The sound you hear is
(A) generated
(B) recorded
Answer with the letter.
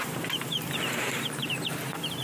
A